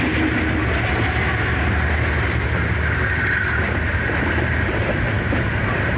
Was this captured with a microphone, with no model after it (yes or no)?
yes